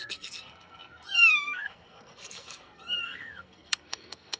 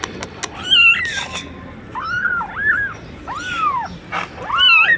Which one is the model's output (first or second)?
first